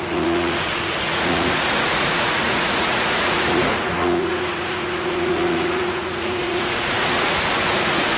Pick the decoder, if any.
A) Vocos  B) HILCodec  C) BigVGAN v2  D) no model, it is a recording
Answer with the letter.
A